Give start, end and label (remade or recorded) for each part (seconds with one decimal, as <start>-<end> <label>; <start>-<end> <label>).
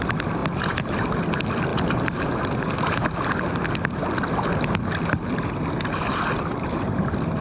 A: 0.0-7.4 recorded